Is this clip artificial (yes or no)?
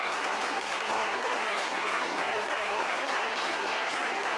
yes